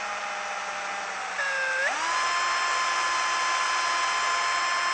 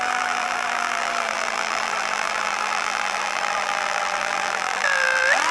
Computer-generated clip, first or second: second